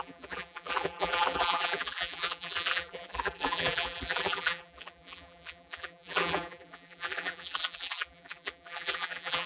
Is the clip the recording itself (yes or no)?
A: no